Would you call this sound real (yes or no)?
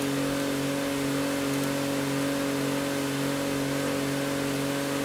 yes